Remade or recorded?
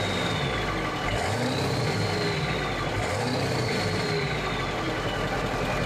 recorded